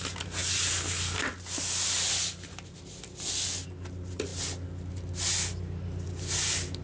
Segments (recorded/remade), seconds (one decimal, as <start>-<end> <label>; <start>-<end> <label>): 0.0-6.8 recorded